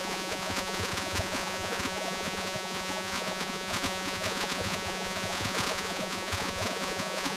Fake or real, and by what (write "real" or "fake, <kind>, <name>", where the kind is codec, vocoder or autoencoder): fake, vocoder, Vocos